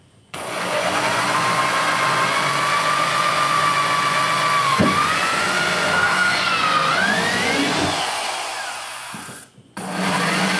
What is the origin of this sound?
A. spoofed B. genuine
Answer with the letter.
A